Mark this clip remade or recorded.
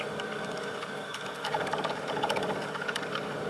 remade